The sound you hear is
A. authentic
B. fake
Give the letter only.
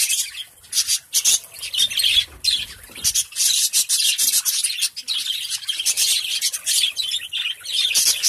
A